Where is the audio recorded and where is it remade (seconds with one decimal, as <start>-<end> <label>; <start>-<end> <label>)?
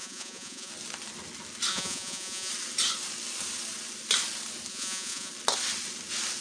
0.0-0.7 remade; 0.7-1.7 recorded; 1.7-2.5 remade; 2.5-4.7 recorded; 4.7-5.3 remade; 5.3-6.4 recorded